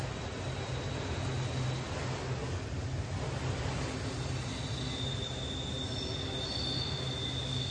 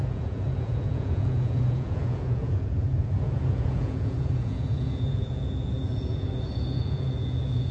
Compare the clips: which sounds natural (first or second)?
first